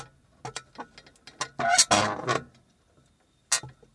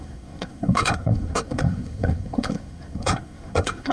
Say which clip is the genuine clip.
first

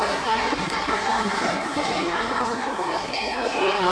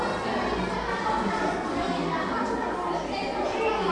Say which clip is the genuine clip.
second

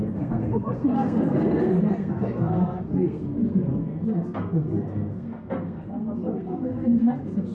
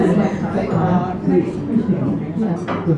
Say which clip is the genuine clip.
second